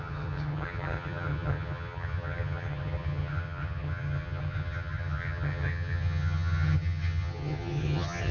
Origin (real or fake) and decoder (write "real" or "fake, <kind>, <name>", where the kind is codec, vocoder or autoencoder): fake, vocoder, HiFi-GAN